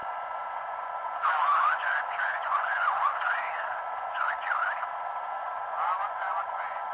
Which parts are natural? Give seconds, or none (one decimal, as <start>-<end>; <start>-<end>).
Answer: 4.6-5.2